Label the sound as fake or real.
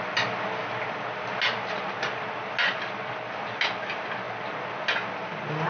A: real